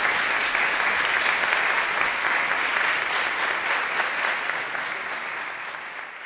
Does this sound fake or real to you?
real